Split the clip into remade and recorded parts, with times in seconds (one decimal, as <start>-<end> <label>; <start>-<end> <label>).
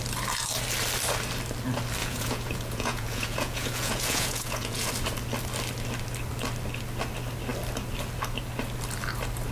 0.0-2.0 recorded; 2.0-4.9 remade; 4.9-9.5 recorded